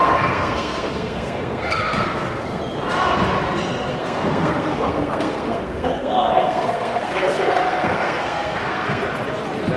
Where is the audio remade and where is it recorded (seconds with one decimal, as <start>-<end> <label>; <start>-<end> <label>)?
0.0-2.6 remade; 2.6-3.9 recorded; 3.9-9.0 remade; 9.0-9.8 recorded